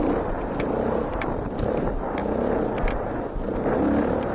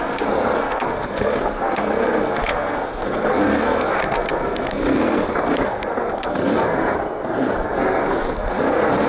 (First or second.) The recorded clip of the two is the first